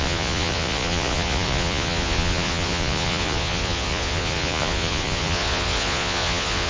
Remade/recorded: remade